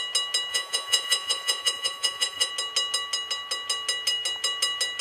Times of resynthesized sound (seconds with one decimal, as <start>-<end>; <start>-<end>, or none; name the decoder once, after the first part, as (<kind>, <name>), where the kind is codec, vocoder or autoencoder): 0.5-2.5 (vocoder, Vocos)